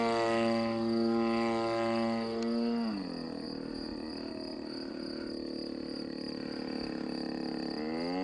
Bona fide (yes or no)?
yes